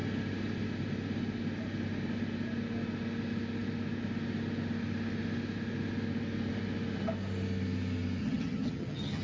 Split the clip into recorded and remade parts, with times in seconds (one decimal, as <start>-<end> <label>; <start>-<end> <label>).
0.0-8.2 recorded; 8.2-9.2 remade